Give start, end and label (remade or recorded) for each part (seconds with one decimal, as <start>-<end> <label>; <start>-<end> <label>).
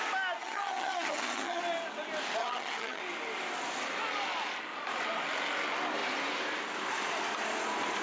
0.0-0.4 recorded; 0.4-1.6 remade; 1.6-2.4 recorded; 2.4-3.0 remade; 3.0-8.0 recorded